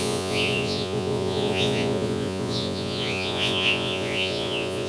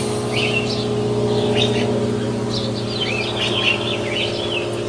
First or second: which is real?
second